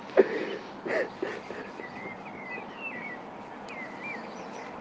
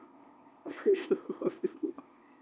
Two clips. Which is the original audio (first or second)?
first